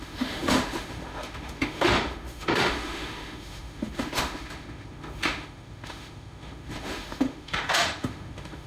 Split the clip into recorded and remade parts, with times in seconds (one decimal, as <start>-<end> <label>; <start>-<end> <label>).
0.0-8.7 remade